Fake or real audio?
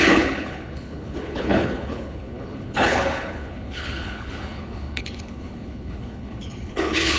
fake